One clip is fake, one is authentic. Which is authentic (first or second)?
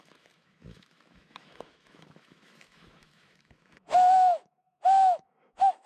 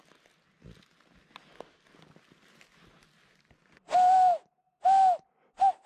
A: second